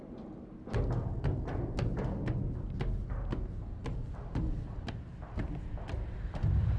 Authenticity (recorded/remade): recorded